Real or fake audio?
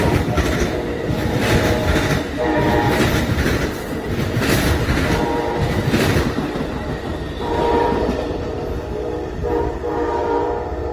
fake